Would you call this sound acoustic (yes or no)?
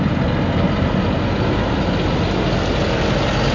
yes